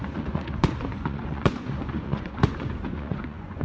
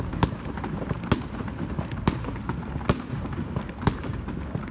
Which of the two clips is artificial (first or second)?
first